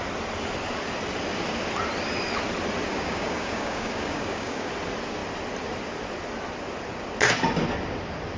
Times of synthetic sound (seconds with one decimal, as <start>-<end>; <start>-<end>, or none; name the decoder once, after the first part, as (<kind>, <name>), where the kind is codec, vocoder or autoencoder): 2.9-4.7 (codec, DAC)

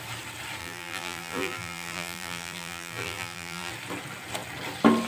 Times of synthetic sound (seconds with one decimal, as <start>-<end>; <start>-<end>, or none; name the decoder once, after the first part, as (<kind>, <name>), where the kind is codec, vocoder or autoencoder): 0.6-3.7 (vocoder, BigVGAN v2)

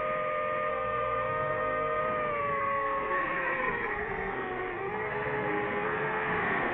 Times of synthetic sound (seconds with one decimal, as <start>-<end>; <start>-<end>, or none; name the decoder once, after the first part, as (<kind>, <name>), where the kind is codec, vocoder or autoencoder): 0.7-2.0 (codec, SNAC); 2.6-6.7